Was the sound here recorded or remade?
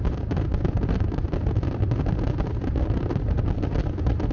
recorded